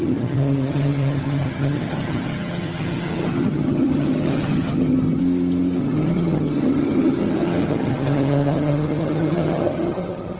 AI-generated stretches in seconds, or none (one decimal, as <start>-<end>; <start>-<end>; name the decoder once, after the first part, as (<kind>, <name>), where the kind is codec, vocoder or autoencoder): 0.0-5.2 (vocoder, HiFi-GAN); 5.8-10.4